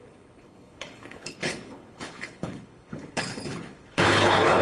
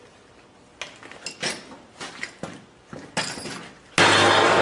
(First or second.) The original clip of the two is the second